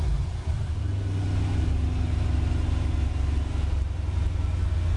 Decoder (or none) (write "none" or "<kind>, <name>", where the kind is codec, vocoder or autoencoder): none